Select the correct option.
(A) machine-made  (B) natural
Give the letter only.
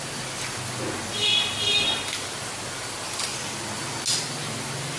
B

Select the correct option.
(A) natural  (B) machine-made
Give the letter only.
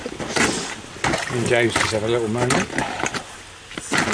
A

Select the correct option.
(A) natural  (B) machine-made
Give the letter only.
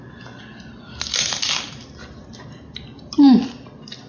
A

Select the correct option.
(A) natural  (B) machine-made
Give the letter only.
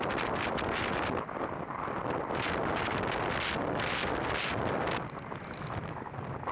A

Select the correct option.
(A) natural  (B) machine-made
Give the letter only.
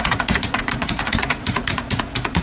B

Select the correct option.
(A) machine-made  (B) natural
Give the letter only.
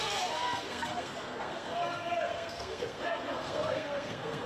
A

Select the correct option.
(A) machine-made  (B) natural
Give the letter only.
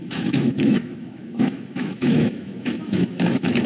A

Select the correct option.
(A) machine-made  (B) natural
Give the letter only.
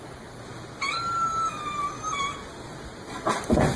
B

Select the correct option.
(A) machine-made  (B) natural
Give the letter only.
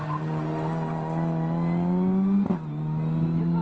B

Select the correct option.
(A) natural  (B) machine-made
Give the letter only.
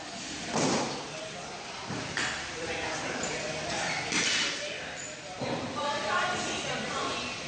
A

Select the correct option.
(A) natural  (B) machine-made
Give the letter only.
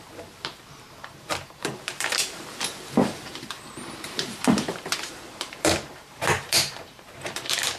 B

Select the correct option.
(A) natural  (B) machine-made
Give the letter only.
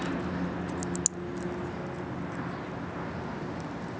A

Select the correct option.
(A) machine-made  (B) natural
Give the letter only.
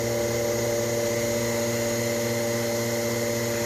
B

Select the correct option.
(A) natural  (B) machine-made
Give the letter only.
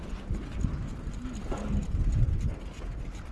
A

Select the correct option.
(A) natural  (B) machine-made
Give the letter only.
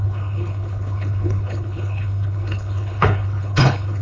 B